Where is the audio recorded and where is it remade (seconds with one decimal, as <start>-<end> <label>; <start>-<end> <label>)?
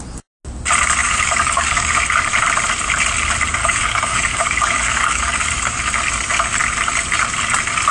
0.0-1.0 recorded; 1.0-1.9 remade; 1.9-3.6 recorded; 3.6-5.8 remade; 5.8-7.9 recorded